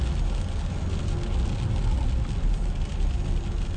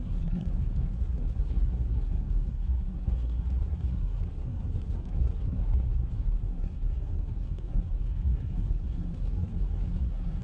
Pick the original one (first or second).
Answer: first